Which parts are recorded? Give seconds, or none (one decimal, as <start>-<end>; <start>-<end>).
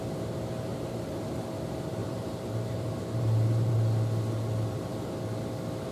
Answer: 0.0-0.7; 1.6-2.0; 3.7-5.9